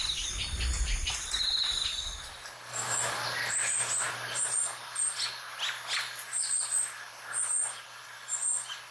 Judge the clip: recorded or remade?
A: recorded